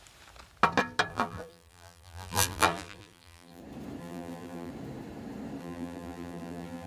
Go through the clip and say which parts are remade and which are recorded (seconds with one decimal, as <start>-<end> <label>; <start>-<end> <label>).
0.0-1.1 recorded; 1.1-3.6 remade; 3.6-4.0 recorded; 4.0-4.7 remade; 4.7-5.6 recorded; 5.6-6.9 remade